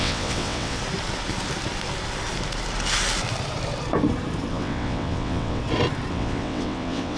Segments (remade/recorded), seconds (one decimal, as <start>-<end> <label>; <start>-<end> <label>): 0.0-0.8 remade; 0.8-4.5 recorded; 4.5-5.6 remade; 5.6-6.1 recorded; 6.1-7.2 remade